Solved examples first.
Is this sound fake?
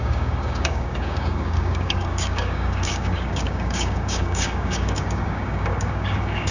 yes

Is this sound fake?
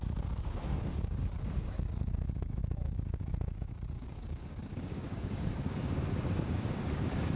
yes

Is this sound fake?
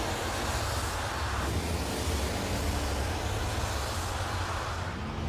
no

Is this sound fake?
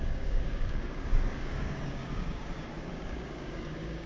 yes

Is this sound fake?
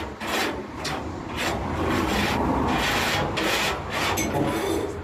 no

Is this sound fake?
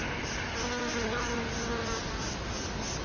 no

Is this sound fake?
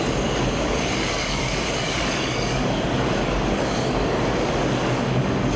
yes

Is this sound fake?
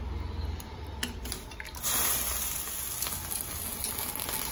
no